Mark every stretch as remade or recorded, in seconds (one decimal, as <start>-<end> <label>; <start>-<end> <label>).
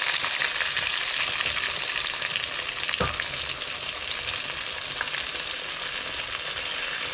0.0-7.1 recorded